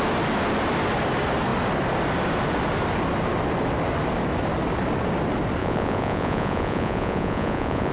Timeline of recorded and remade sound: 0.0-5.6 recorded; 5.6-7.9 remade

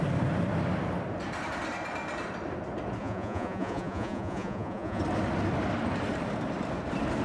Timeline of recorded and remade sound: 0.0-3.0 recorded; 3.0-5.0 remade; 5.0-7.2 recorded